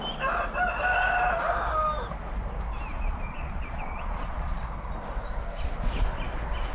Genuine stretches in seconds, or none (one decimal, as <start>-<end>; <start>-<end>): 0.0-2.9; 4.6-6.7